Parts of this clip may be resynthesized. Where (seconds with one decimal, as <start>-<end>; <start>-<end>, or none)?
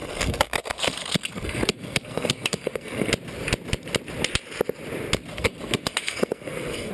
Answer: 0.0-3.1; 5.3-6.9